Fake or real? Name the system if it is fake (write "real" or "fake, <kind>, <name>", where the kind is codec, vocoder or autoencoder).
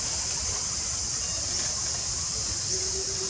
real